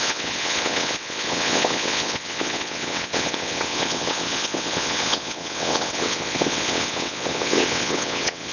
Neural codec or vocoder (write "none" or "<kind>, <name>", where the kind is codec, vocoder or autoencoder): vocoder, WaveNeXt